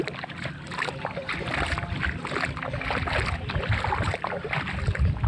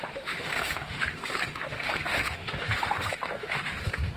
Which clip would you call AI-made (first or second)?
second